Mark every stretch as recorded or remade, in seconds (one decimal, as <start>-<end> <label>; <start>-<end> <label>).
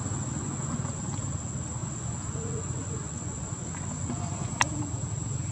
0.0-0.4 recorded; 0.4-1.0 remade; 1.0-1.8 recorded; 1.8-4.5 remade; 4.5-5.5 recorded